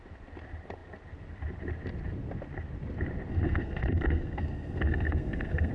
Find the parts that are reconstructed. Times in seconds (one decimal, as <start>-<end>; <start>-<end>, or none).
3.3-5.7